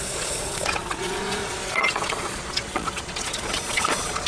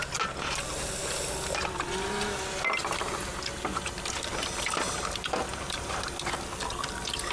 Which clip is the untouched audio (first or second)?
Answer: second